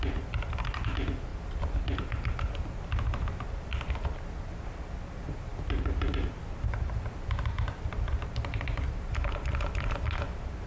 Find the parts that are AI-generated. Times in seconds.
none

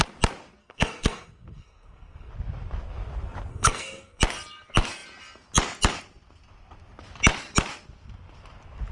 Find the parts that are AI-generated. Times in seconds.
0.6-2.3 (codec, SNAC); 3.5-4.2

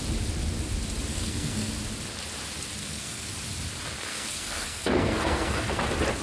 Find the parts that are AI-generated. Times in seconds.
1.1-1.7 (codec, SNAC); 2.8-3.3; 4.1-5.8

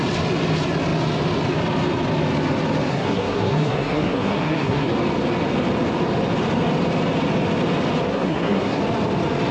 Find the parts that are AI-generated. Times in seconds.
2.9-4.9 (codec, SNAC); 8.1-8.8

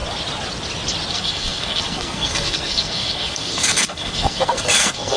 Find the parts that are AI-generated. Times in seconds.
1.1-5.2 (codec, SNAC)

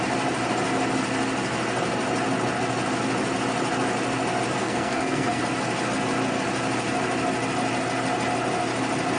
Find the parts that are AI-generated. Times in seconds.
4.6-5.4 (codec, SNAC)

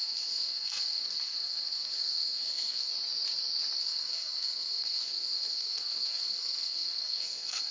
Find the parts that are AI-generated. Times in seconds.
0.0-2.9 (codec, SNAC); 3.8-7.7

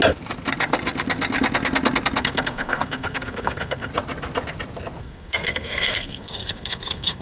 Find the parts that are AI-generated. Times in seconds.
2.2-3.9 (codec, SNAC); 5.0-7.2